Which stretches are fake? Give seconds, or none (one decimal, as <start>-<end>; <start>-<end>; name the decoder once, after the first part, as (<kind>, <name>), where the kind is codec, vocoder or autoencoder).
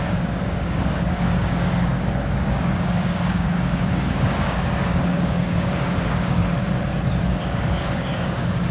0.0-6.4 (codec, DAC); 7.3-8.7